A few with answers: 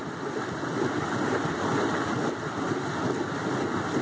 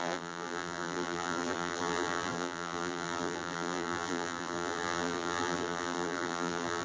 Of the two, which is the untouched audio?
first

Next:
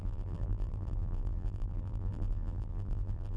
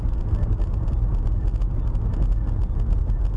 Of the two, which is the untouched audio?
second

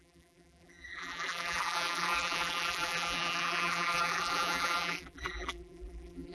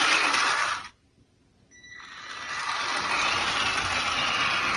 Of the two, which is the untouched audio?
second